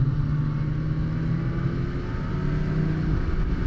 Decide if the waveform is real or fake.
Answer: real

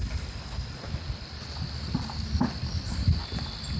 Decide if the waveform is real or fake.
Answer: fake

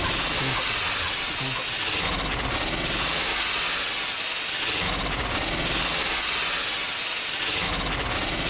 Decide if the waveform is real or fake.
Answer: real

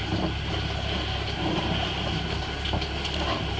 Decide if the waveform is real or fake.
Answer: real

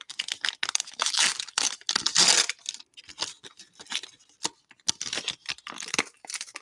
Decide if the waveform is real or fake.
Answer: real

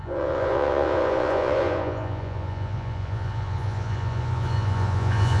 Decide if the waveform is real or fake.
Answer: fake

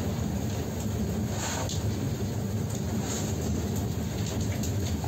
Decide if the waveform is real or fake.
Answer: real